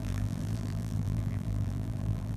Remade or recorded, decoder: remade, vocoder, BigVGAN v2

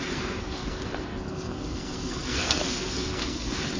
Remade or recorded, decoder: remade, codec, SNAC